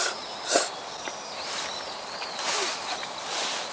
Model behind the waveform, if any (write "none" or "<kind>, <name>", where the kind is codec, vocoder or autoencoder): none